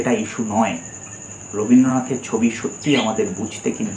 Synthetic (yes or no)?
yes